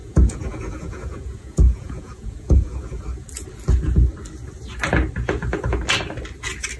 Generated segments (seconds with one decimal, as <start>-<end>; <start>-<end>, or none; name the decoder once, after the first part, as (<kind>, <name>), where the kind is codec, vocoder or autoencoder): 0.0-3.0 (vocoder, Vocos)